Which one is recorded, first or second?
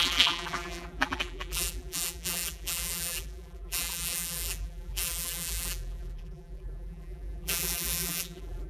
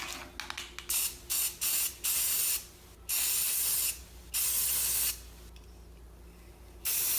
second